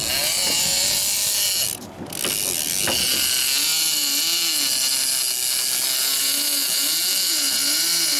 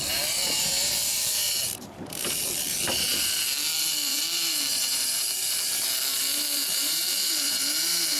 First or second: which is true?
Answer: first